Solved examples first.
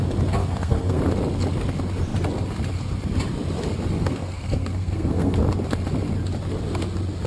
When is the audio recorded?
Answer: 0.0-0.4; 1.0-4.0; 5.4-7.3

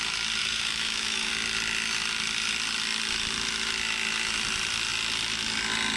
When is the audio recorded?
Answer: 0.0-0.4; 1.3-6.0

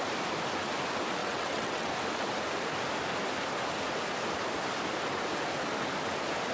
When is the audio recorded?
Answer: 0.0-1.2; 1.9-6.5